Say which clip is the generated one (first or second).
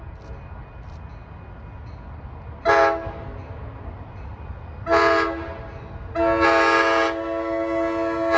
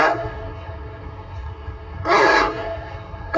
second